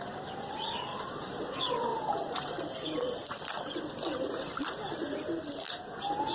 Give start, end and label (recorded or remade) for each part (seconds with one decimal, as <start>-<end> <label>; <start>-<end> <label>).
0.0-0.9 recorded; 0.9-1.4 remade; 1.4-1.9 recorded; 1.9-2.6 remade; 2.6-6.3 recorded